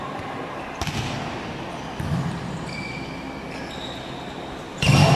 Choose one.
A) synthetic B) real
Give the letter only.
B